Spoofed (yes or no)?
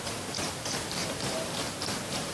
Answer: yes